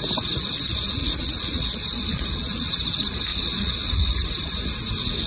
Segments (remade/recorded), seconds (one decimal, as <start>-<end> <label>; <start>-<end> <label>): 0.0-1.0 recorded; 1.0-2.7 remade; 2.7-3.3 recorded; 3.3-4.0 remade; 4.0-5.3 recorded